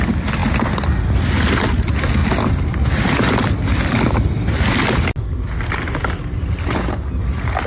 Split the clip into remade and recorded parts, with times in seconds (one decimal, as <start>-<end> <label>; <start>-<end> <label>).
0.0-7.7 recorded